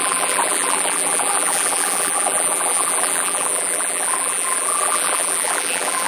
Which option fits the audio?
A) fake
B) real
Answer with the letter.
A